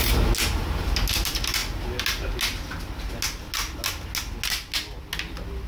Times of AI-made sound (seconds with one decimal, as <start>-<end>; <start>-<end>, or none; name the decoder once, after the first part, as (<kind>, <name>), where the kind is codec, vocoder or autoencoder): none